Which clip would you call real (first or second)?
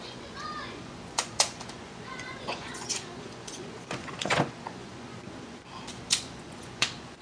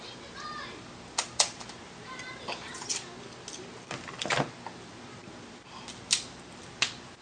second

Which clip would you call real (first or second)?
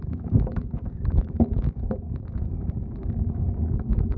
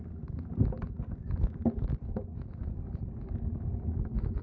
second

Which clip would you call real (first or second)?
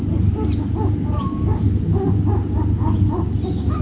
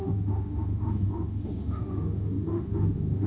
first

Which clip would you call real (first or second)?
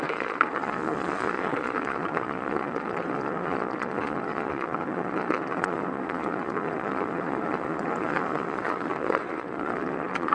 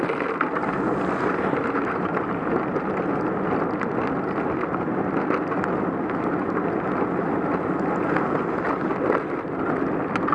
second